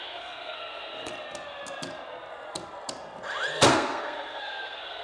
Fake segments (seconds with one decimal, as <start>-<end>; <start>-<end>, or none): 0.0-1.1; 3.7-5.0